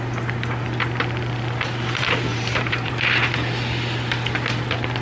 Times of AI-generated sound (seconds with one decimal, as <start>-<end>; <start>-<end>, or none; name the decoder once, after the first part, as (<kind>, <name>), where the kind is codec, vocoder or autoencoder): 2.3-2.9 (vocoder, BigVGAN v2)